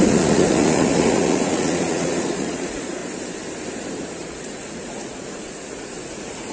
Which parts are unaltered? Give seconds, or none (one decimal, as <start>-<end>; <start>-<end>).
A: 3.0-4.1